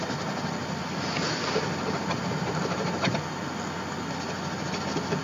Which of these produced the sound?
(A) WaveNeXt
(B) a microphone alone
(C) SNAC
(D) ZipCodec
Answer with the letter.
B